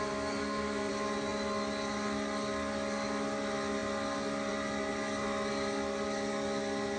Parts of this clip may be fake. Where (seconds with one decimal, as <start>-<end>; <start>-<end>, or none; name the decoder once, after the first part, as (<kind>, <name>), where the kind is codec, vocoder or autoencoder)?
0.4-0.9 (codec, SNAC)